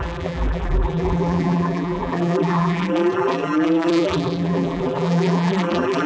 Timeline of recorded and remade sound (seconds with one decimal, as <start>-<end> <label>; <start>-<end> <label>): 0.0-6.1 remade